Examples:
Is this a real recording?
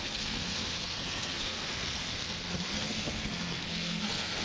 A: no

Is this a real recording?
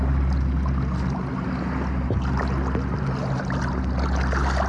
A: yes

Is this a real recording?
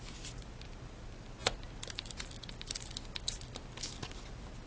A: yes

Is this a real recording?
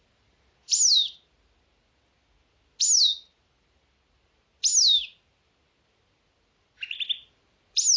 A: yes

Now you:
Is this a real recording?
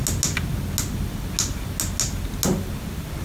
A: yes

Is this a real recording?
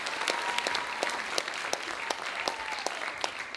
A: yes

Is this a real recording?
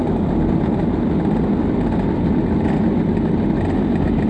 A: yes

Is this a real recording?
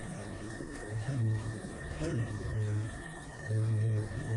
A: no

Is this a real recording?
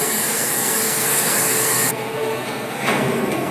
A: no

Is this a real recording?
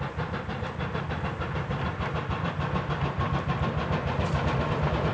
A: yes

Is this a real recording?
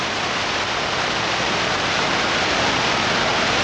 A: yes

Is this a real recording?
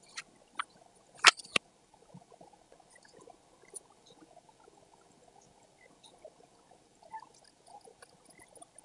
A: yes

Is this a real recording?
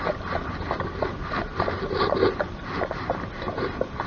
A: yes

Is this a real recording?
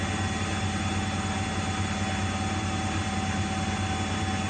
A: yes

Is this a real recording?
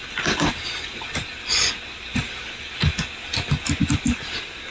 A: yes